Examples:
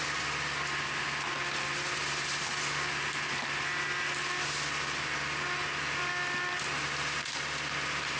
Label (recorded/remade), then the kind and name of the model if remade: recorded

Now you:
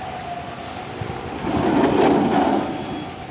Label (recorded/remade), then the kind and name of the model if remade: recorded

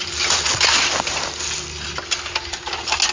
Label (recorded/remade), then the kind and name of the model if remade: recorded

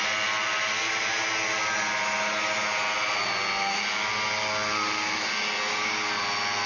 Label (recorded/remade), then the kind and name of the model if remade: recorded